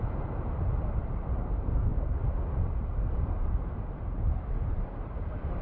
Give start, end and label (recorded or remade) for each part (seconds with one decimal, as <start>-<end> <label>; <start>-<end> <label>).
0.0-1.9 recorded; 1.9-5.6 remade